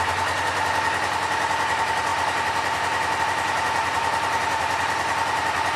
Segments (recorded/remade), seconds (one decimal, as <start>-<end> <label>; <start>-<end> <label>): 0.0-2.1 recorded; 2.1-3.2 remade; 3.2-5.8 recorded